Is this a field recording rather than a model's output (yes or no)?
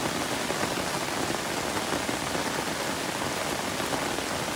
yes